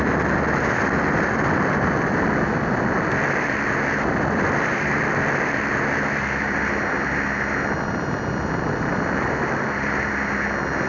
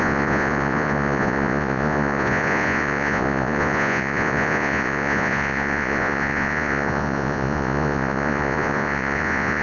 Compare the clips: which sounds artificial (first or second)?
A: second